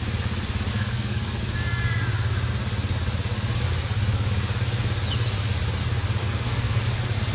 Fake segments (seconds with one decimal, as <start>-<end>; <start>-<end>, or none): 0.7-1.4; 6.2-6.8